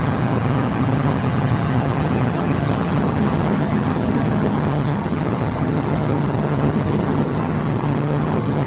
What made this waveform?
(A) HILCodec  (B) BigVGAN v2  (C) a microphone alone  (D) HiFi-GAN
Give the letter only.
D